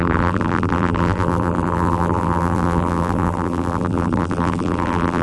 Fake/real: fake